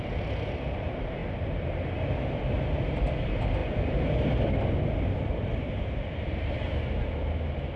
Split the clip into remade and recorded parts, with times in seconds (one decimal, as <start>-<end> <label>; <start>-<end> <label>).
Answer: 0.0-5.5 recorded; 5.5-7.2 remade; 7.2-7.8 recorded